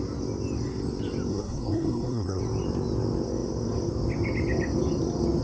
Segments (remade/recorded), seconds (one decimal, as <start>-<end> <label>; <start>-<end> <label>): 0.0-1.3 recorded; 1.3-2.4 remade; 2.4-5.4 recorded